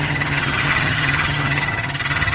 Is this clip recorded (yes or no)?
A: no